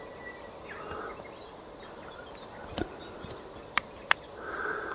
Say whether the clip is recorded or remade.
recorded